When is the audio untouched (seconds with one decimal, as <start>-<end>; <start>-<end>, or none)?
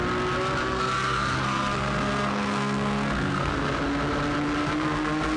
0.0-0.6; 3.8-4.6